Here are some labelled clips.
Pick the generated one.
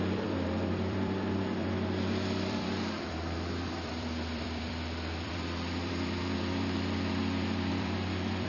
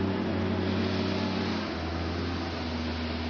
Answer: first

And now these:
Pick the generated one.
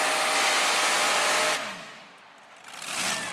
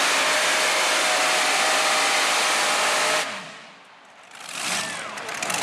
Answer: second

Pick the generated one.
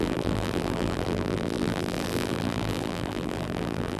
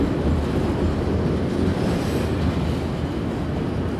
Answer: first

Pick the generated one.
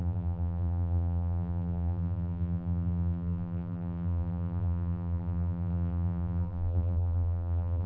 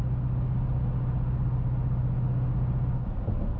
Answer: first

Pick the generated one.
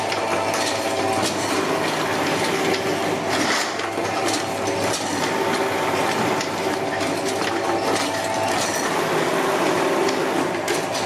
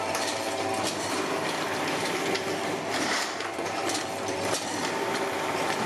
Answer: second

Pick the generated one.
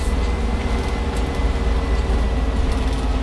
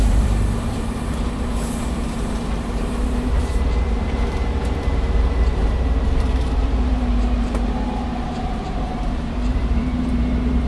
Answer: second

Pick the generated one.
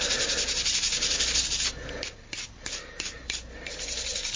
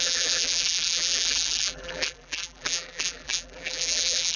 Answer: second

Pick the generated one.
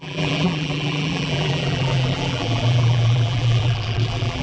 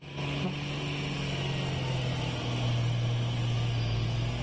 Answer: first